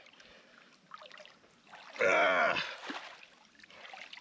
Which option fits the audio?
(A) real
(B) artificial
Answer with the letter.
A